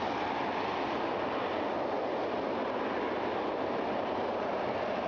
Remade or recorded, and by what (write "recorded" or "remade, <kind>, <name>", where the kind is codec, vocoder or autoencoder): recorded